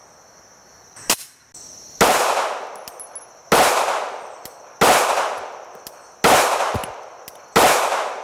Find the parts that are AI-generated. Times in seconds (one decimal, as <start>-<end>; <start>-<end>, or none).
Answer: none